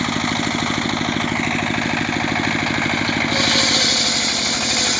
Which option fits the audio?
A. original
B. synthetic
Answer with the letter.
A